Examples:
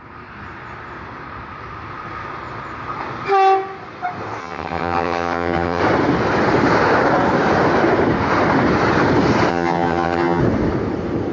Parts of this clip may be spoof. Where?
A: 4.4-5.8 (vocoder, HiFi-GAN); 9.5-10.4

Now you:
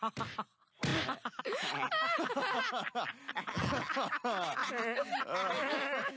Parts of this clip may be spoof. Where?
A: none